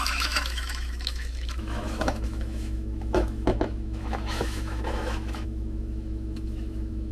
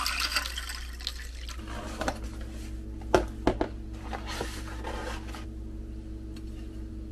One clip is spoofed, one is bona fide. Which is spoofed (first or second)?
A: first